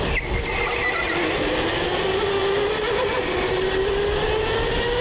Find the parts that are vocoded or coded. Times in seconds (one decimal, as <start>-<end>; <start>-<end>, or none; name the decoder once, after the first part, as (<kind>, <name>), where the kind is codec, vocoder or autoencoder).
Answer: none